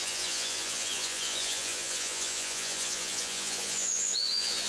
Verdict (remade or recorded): remade